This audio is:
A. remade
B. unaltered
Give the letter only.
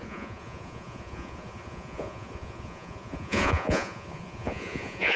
A